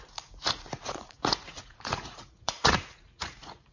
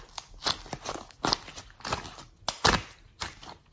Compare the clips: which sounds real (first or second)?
second